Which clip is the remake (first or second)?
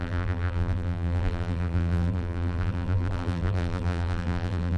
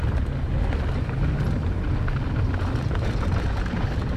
first